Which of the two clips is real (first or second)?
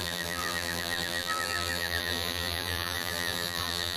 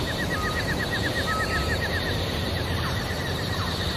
second